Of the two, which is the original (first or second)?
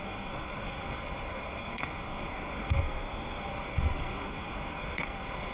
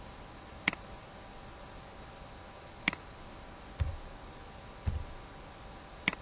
second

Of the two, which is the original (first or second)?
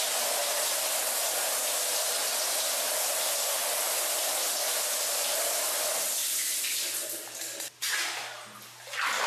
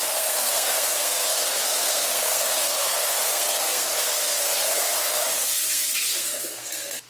first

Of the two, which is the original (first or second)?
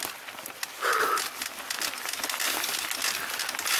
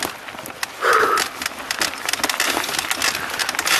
second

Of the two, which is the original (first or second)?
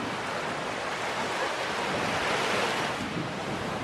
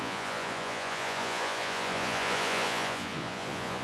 first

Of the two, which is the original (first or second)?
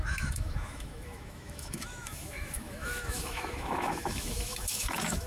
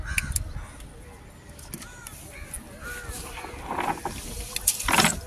second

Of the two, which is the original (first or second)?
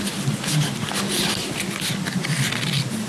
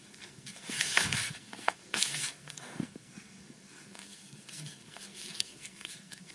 first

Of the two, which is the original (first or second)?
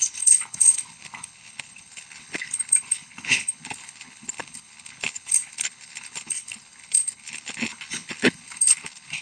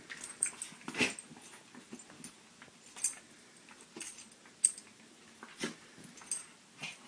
second